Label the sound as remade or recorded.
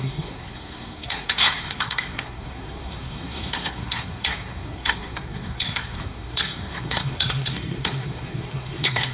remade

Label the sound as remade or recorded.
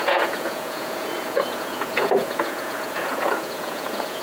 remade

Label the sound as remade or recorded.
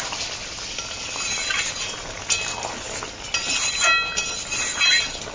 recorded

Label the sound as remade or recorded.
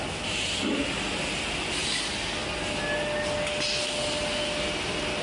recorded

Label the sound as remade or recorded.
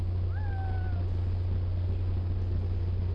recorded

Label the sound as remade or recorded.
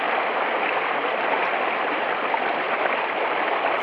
recorded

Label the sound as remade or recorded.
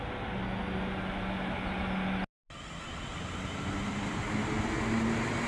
recorded